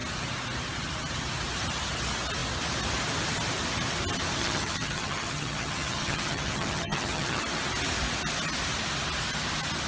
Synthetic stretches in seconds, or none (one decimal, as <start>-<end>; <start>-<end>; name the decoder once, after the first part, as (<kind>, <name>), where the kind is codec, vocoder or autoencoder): 4.4-7.4 (vocoder, HiFi-GAN)